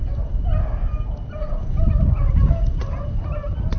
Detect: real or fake real